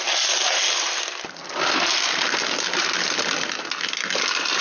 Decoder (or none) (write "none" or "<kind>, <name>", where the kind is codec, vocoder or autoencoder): none